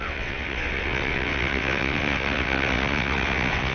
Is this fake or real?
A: fake